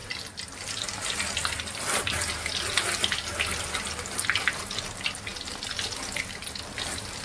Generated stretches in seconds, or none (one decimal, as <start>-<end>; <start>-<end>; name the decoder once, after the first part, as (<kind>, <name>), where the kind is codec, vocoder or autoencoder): none